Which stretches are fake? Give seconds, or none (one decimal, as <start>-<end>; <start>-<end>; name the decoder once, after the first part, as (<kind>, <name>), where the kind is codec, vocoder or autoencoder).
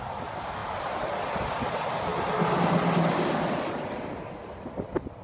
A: none